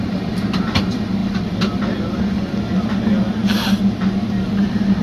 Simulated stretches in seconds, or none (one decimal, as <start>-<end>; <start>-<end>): 0.0-3.4